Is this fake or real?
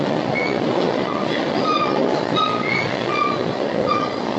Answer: fake